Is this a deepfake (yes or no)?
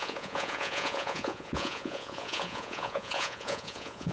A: yes